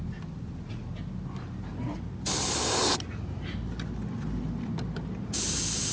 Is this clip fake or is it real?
real